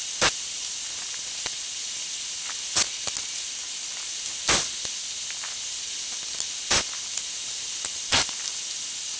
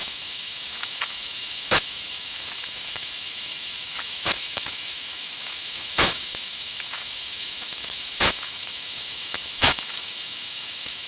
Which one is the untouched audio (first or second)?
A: first